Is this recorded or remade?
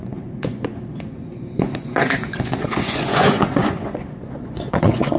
remade